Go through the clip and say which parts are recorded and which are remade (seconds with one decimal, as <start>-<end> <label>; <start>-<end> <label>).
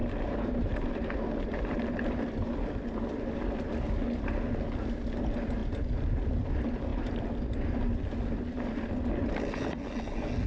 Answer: 0.0-2.2 remade; 2.2-10.5 recorded